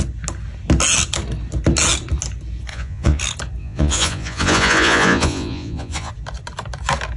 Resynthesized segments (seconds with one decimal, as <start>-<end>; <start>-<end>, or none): 2.7-3.2; 3.6-6.1